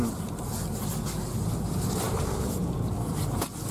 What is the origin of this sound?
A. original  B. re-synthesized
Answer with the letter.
A